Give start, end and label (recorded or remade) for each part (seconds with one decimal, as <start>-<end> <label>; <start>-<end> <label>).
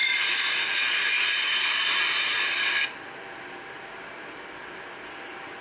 0.0-5.6 recorded